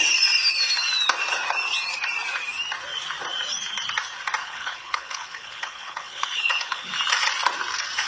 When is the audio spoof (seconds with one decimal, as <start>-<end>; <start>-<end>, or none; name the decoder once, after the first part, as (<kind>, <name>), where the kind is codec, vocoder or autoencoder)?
4.4-6.9 (codec, HILCodec)